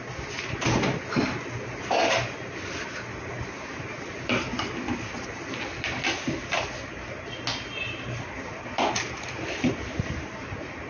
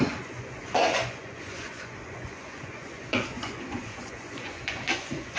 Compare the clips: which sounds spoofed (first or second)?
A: second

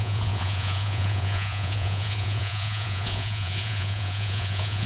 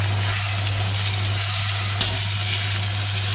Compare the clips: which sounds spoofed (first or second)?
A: first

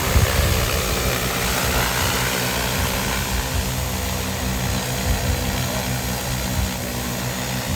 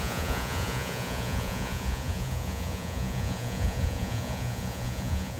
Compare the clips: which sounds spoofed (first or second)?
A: second